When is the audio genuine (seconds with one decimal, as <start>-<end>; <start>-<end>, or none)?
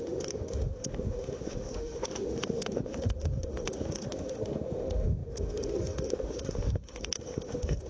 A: none